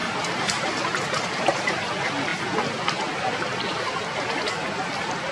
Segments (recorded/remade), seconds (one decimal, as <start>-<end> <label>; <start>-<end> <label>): 0.0-1.9 remade; 1.9-5.3 recorded